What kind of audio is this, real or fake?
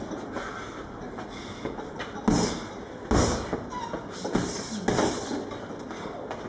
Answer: real